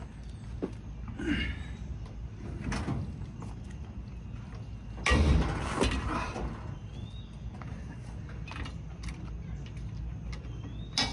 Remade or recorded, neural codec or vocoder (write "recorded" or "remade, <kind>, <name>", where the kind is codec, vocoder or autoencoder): recorded